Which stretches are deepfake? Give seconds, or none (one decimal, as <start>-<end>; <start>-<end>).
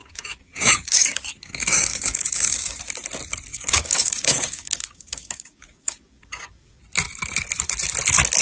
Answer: 0.0-2.8; 3.5-6.8